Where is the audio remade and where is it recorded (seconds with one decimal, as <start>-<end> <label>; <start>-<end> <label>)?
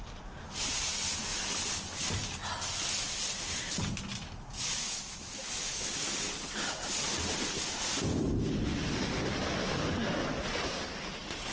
0.0-4.1 recorded; 4.1-6.1 remade; 6.1-11.5 recorded